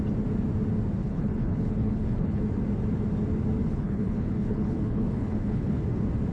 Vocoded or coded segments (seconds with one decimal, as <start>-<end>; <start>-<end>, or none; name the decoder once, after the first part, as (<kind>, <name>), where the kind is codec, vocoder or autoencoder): 1.0-2.4 (codec, HILCodec); 3.6-5.8

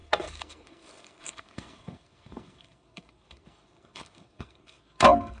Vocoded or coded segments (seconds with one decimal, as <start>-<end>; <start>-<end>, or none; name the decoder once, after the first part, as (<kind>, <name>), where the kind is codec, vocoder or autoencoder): 0.0-5.4 (codec, SNAC)

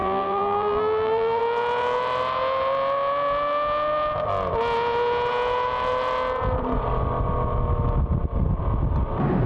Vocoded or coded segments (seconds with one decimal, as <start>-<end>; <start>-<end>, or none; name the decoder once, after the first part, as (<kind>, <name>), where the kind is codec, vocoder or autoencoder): 0.0-1.4 (vocoder, BigVGAN v2)

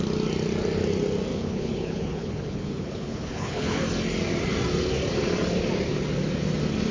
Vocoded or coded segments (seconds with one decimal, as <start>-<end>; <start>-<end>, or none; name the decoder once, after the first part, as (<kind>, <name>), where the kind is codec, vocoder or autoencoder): 1.3-3.8 (codec, HILCodec)

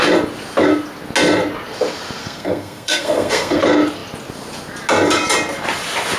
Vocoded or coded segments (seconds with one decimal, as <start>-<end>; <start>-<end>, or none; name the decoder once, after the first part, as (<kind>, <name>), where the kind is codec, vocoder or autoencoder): 2.2-3.6 (codec, SNAC)

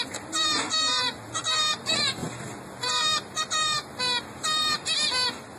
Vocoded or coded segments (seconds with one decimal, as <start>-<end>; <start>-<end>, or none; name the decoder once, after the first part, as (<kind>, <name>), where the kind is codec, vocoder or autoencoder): none

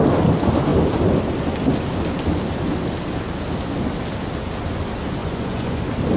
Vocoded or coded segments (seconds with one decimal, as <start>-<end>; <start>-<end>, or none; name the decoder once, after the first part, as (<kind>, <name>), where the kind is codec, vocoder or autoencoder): 5.2-5.8 (vocoder, Vocos)

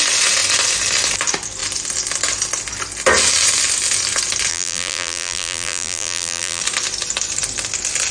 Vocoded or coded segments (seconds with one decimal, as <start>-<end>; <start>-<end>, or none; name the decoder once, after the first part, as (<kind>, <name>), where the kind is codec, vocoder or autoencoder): 4.5-6.6 (vocoder, BigVGAN v2)